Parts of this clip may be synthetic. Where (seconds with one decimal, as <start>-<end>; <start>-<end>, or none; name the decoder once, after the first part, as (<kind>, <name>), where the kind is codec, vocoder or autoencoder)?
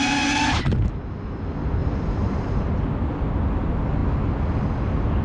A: 1.8-2.7 (vocoder, BigVGAN v2)